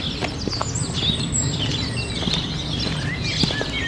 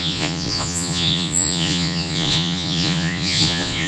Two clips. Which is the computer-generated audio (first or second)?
second